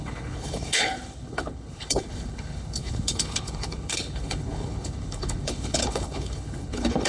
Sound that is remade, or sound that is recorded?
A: remade